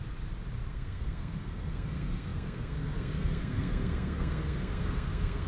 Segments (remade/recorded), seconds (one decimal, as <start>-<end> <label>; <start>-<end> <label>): 0.0-0.7 recorded; 0.7-5.5 remade